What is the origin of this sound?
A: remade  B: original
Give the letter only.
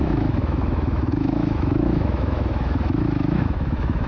A